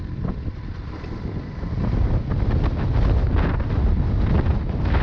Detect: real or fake real